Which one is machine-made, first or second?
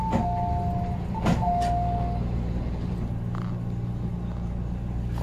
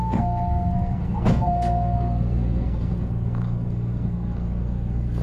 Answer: second